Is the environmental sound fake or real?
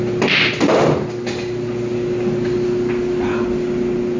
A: real